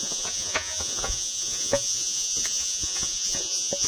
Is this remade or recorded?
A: remade